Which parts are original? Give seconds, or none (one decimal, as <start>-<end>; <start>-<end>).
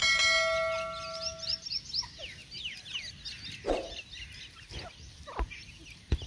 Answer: 0.0-6.3